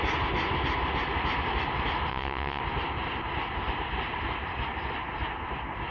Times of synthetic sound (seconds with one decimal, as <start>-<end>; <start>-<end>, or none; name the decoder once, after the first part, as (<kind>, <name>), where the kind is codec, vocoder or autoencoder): 2.1-2.6 (vocoder, WaveNeXt)